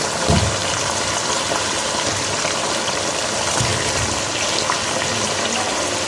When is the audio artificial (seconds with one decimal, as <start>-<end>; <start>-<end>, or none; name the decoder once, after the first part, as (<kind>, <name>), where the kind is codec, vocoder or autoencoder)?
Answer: none